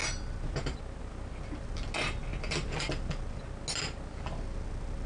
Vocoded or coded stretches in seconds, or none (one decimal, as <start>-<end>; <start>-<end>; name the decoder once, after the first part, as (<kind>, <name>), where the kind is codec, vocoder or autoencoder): 2.3-3.4 (vocoder, BigVGAN v2)